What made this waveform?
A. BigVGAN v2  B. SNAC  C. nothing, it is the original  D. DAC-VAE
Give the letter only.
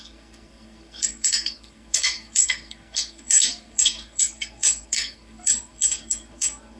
B